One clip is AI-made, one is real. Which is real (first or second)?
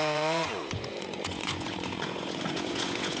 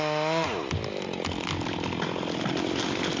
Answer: second